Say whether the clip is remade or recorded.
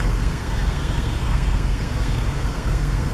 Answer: remade